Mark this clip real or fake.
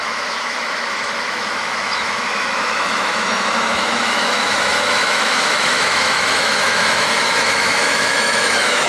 fake